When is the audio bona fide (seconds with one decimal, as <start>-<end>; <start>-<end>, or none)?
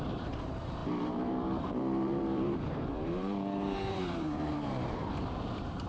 none